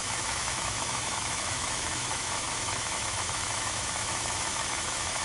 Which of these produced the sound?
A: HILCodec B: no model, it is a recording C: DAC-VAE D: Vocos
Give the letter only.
C